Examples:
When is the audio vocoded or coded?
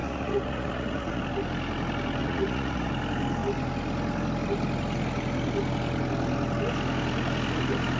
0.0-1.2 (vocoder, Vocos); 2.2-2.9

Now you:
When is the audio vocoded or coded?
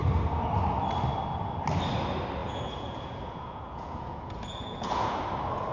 2.4-5.2 (vocoder, Vocos)